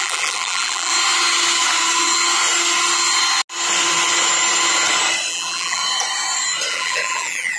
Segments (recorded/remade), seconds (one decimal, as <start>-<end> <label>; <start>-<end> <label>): 0.0-0.9 remade; 0.9-5.3 recorded; 5.3-5.8 remade; 5.8-6.7 recorded; 6.7-7.6 remade